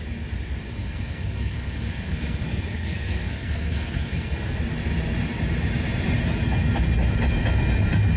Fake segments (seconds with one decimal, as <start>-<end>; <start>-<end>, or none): 0.7-4.6